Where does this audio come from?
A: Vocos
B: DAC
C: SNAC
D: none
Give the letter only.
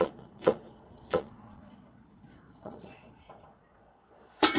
A